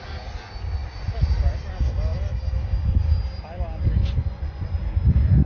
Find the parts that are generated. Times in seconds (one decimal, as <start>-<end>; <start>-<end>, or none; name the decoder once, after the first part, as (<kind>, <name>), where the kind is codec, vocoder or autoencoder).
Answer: 4.0-4.7 (vocoder, Vocos)